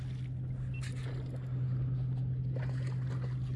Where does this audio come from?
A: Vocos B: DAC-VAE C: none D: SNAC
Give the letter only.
C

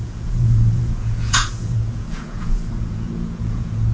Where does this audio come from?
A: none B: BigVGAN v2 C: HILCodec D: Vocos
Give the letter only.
D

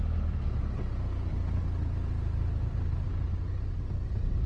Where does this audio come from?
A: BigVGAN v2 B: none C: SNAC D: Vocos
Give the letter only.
B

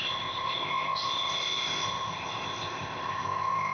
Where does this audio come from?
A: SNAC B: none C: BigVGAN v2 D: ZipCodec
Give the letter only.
D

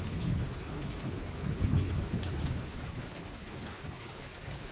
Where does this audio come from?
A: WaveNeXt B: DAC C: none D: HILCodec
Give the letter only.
D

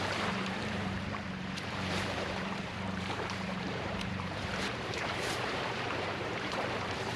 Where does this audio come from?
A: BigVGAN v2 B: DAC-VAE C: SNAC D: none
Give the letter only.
A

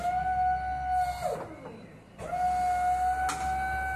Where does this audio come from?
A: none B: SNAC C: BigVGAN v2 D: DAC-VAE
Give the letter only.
A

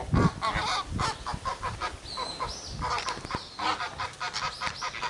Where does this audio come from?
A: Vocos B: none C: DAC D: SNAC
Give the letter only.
B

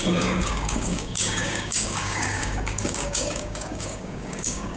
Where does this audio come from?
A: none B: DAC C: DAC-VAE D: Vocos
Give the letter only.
B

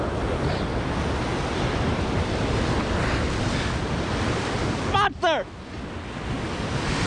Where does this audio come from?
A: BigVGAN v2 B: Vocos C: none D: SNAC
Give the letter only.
C